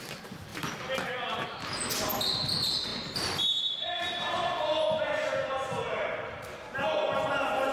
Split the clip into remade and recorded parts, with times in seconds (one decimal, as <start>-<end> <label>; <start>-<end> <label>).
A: 0.0-7.7 recorded